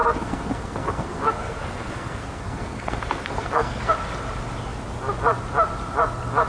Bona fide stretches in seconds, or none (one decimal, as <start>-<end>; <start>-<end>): 3.9-6.5